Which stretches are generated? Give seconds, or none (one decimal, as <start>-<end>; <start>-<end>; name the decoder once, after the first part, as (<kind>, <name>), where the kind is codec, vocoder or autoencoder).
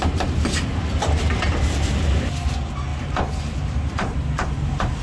2.9-5.0 (vocoder, BigVGAN v2)